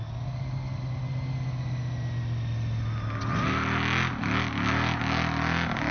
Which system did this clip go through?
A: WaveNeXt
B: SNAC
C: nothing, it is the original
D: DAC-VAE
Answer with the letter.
C